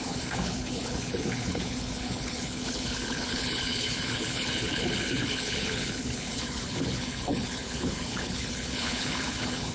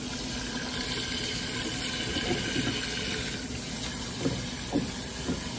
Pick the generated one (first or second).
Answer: first